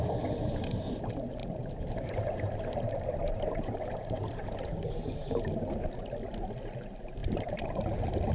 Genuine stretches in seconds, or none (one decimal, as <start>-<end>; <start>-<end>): 0.0-1.4; 5.3-7.2; 7.8-8.3